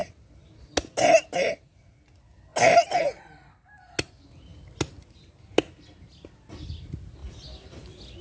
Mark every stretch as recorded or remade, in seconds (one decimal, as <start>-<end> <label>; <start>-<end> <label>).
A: 0.0-8.2 recorded